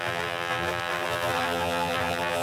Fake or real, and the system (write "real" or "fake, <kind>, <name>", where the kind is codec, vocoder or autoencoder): fake, vocoder, BigVGAN v2